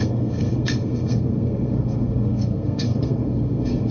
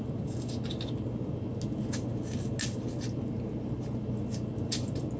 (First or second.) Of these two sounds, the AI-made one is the first